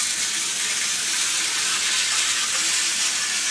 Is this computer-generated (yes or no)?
no